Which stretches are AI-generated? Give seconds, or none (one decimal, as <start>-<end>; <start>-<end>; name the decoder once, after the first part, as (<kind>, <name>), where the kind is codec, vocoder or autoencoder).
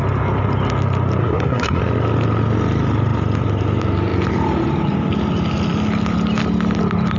1.2-1.8 (codec, SNAC)